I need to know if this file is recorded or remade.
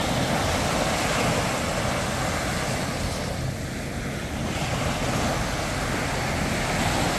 recorded